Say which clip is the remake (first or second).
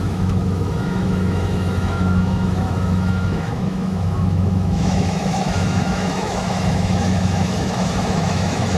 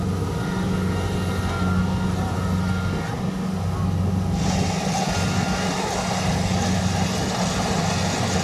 first